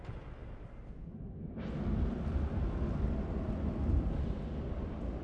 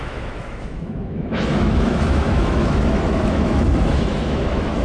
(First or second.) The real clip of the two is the first